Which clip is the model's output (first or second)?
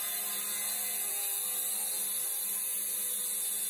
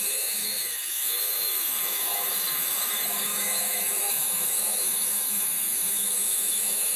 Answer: second